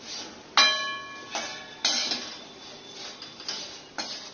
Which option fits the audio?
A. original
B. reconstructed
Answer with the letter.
A